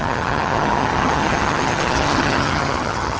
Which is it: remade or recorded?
remade